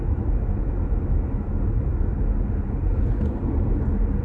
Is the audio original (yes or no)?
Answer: yes